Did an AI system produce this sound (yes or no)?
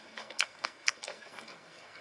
yes